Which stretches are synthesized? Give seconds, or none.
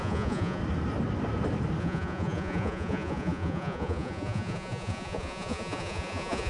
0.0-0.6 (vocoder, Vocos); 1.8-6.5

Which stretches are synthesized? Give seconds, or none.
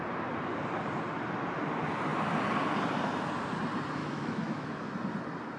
4.0-4.9 (autoencoder, DAC-VAE)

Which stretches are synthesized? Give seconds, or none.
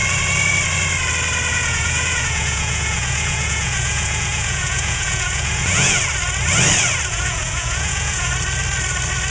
1.5-6.0 (vocoder, Vocos); 7.1-8.3